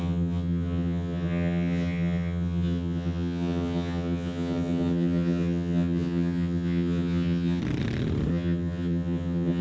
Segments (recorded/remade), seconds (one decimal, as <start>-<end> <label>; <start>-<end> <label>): 0.0-7.6 remade; 7.6-8.3 recorded; 8.3-9.6 remade